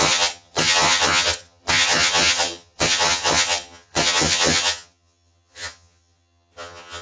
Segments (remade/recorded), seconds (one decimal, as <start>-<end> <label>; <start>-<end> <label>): 0.0-7.0 remade